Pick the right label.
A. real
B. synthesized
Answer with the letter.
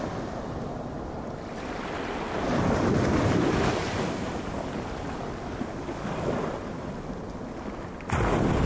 A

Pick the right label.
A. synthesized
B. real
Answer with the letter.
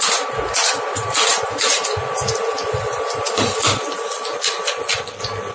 B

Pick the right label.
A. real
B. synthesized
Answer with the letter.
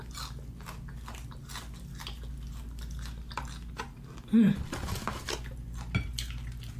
A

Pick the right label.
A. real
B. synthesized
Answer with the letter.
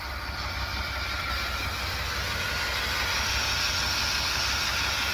A